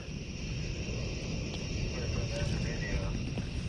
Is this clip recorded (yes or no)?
yes